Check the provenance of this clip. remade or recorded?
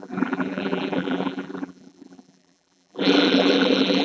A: remade